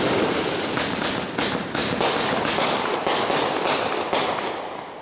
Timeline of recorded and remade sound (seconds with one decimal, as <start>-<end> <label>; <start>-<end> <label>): 0.0-1.8 remade; 1.8-4.3 recorded; 4.3-5.0 remade